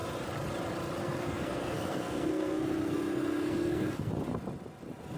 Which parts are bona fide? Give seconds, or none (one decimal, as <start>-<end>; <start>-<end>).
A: 0.0-1.0; 4.1-5.2